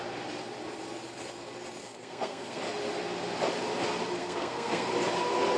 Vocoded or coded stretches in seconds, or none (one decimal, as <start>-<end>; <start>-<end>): 1.8-2.6; 4.2-4.9